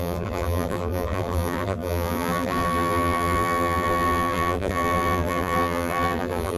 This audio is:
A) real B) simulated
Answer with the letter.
B